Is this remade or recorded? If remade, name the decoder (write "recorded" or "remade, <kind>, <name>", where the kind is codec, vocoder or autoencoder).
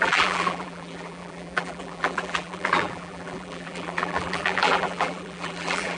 remade, vocoder, BigVGAN v2